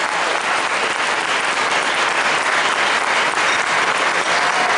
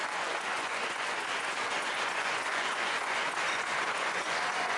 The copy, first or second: second